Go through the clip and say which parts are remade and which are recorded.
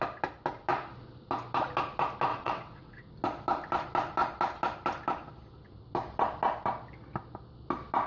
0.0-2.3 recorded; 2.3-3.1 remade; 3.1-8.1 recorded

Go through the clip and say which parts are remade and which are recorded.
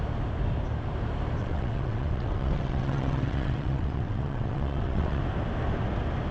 0.0-1.4 recorded; 1.4-5.2 remade; 5.2-6.3 recorded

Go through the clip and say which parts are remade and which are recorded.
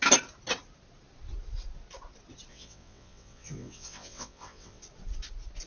0.0-2.5 recorded; 2.5-4.8 remade; 4.8-5.7 recorded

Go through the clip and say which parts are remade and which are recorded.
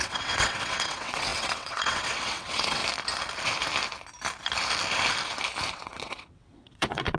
0.0-2.8 remade; 2.8-5.7 recorded; 5.7-7.2 remade